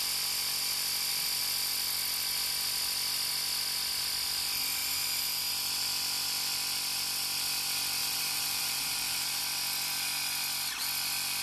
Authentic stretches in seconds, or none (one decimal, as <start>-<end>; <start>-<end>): 0.0-4.8; 5.5-8.0; 9.4-11.4